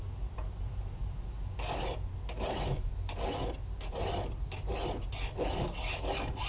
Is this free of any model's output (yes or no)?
yes